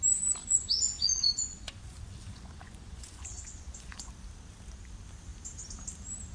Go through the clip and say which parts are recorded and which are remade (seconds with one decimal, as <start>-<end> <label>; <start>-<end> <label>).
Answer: 0.0-0.4 recorded; 0.4-4.1 remade; 4.1-6.3 recorded